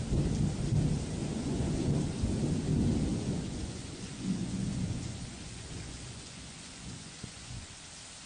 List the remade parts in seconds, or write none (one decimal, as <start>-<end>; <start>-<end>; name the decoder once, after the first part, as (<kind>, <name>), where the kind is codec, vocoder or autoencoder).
1.2-2.0 (vocoder, Vocos); 3.1-7.8

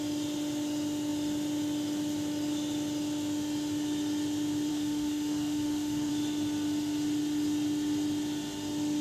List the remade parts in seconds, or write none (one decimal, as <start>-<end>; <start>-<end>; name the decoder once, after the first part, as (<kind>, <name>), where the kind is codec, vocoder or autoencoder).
4.7-6.1 (autoencoder, DAC-VAE)

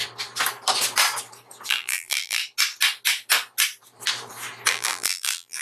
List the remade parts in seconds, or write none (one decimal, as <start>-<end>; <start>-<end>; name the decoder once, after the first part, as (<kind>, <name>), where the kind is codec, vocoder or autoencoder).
1.7-2.4 (vocoder, BigVGAN v2); 4.7-5.6

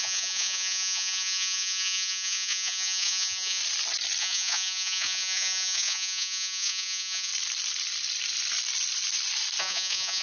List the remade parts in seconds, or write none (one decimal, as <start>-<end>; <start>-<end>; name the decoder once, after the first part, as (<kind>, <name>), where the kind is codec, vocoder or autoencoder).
0.0-3.6 (vocoder, Vocos); 4.2-7.3; 9.6-10.2

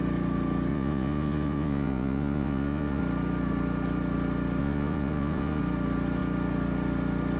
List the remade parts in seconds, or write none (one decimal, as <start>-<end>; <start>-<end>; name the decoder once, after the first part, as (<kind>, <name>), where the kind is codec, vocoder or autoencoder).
0.7-3.0 (vocoder, Vocos); 4.6-5.6

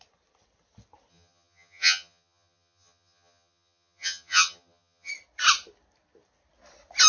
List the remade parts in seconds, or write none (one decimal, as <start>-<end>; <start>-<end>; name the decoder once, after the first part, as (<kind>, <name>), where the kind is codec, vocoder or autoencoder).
1.1-5.1 (vocoder, HiFi-GAN)